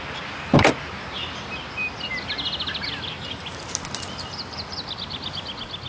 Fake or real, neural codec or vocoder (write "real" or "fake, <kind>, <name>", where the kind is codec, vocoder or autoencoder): real